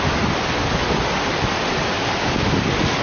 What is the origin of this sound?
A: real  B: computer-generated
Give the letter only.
A